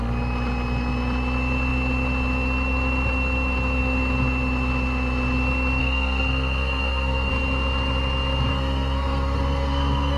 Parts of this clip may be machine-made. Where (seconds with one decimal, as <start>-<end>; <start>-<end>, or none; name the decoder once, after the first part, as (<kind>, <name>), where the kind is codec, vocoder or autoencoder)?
5.8-7.3 (codec, SNAC); 8.5-10.2